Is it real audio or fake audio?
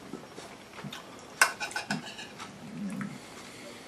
real